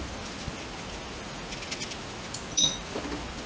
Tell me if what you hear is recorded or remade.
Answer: recorded